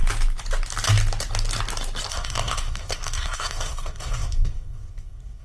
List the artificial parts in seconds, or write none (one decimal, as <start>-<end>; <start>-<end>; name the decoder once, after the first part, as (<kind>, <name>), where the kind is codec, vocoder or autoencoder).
2.1-5.4 (codec, SNAC)